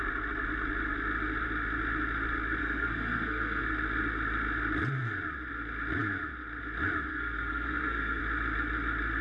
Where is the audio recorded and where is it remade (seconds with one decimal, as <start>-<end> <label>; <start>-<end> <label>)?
0.0-2.6 recorded; 2.6-3.6 remade; 3.6-7.1 recorded; 7.1-8.2 remade; 8.2-9.2 recorded